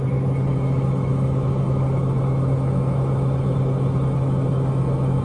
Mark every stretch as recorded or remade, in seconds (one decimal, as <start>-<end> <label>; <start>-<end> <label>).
0.0-5.2 remade